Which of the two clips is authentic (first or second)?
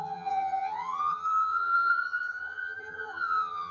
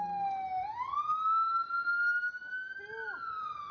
second